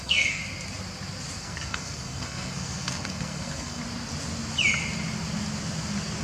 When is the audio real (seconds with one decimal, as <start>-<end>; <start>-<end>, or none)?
0.4-1.4; 3.8-6.2